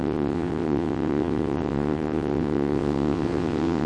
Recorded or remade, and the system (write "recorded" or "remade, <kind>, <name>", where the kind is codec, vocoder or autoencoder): remade, vocoder, WaveNeXt